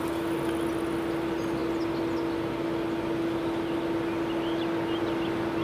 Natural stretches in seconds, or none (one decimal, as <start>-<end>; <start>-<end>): 0.0-5.6